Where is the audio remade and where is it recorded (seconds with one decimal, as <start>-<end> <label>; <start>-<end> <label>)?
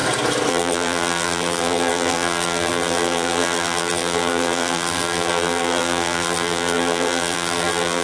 0.0-0.5 recorded; 0.5-8.0 remade